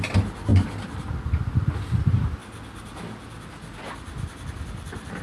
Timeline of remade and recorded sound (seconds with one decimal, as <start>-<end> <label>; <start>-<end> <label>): 0.0-2.4 remade; 2.4-4.5 recorded; 4.5-5.2 remade